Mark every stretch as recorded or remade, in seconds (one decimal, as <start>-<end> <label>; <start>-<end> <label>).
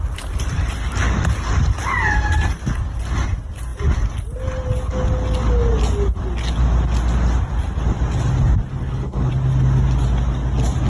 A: 0.0-8.8 recorded; 8.8-9.3 remade; 9.3-10.9 recorded